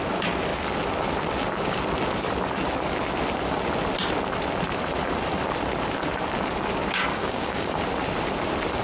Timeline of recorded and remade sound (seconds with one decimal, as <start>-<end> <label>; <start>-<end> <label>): 0.0-7.1 recorded; 7.1-7.8 remade; 7.8-8.8 recorded